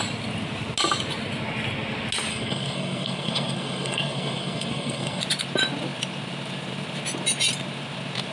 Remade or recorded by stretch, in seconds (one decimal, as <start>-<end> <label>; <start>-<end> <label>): 0.0-2.3 recorded; 2.3-5.2 remade; 5.2-8.3 recorded